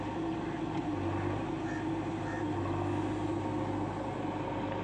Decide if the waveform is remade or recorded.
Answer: recorded